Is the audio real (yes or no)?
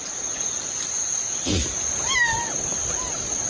yes